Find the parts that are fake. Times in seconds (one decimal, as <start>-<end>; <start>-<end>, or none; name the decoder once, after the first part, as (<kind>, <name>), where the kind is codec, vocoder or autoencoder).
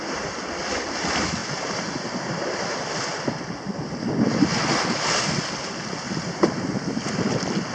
none